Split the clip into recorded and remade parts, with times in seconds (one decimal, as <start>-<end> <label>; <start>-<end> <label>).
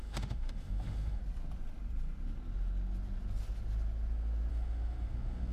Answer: 0.0-1.2 remade; 1.2-4.5 recorded; 4.5-5.5 remade